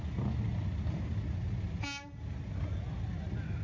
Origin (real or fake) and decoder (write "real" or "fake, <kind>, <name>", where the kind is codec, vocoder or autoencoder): real